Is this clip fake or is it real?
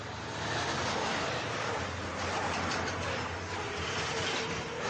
real